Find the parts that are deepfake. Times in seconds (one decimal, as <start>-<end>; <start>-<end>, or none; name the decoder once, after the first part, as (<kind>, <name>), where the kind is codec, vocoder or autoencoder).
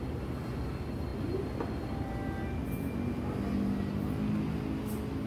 none